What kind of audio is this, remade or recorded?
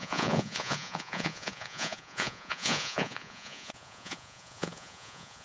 remade